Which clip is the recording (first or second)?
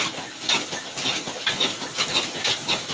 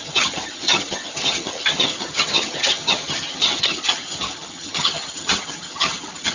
first